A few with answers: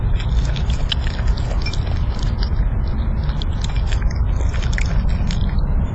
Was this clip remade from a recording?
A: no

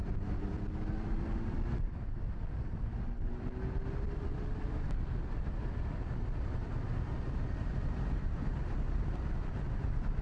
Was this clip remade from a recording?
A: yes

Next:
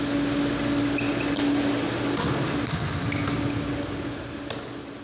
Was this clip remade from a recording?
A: no